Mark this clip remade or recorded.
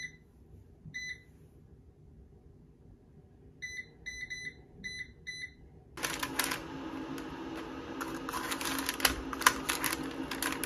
recorded